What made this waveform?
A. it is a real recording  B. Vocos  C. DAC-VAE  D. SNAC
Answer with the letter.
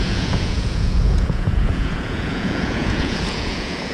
B